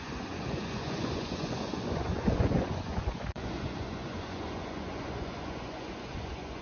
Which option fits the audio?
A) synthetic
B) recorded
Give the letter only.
A